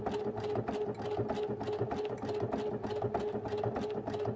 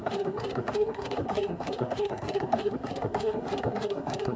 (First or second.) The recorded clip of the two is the first